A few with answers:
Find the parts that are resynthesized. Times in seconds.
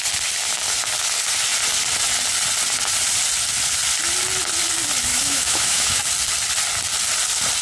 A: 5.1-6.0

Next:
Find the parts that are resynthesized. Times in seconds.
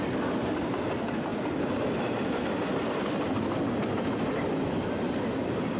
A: none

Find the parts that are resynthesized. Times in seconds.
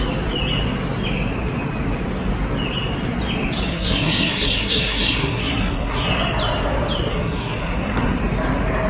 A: 3.7-6.1; 7.1-8.2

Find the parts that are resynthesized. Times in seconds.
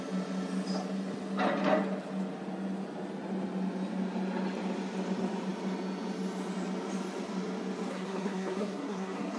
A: 7.9-9.4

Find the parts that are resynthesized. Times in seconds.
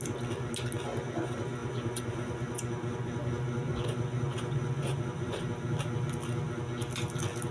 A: 1.6-3.2; 3.7-5.4